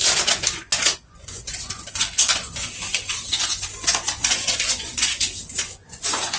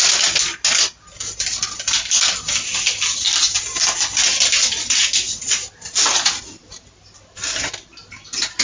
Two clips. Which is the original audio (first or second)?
second